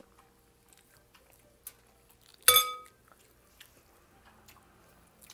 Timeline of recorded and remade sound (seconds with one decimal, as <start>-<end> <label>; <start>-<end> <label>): 0.0-5.3 recorded

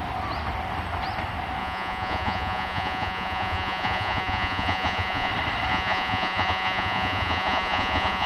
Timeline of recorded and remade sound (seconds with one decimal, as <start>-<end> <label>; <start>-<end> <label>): 0.0-1.6 recorded; 1.6-5.3 remade; 5.3-5.7 recorded; 5.7-8.3 remade

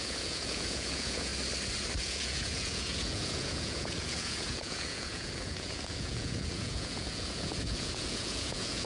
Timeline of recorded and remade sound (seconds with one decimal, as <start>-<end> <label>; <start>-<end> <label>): 0.0-1.3 remade; 1.3-2.0 recorded; 2.0-8.9 remade

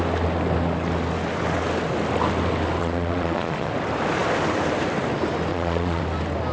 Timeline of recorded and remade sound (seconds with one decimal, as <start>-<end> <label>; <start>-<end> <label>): 0.0-2.8 recorded; 2.8-3.7 remade; 3.7-5.5 recorded; 5.5-6.0 remade; 6.0-6.5 recorded